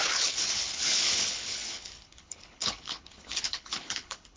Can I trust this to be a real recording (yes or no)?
no